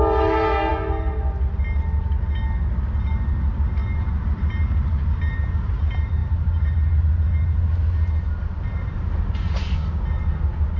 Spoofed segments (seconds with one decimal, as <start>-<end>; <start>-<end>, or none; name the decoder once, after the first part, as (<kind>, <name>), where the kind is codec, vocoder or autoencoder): 6.2-7.0 (vocoder, BigVGAN v2)